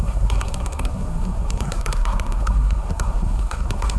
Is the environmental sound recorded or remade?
remade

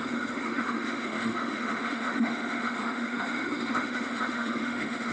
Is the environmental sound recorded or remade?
remade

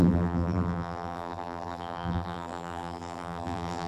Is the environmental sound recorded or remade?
remade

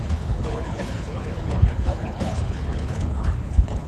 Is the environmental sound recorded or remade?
remade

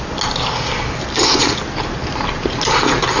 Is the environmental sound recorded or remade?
recorded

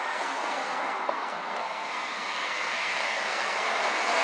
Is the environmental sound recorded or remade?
remade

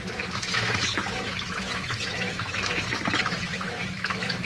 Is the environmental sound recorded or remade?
remade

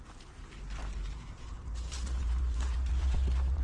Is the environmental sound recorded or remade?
remade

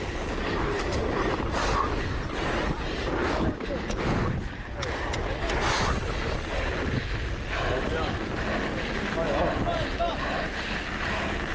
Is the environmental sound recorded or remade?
recorded